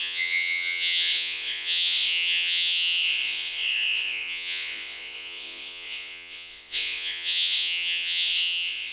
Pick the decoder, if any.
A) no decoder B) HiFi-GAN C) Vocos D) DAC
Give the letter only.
C